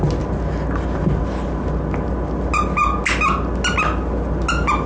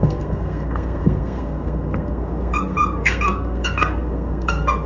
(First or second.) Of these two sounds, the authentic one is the first